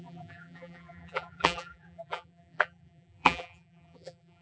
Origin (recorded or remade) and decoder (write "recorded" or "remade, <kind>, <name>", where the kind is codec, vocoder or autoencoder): remade, vocoder, BigVGAN v2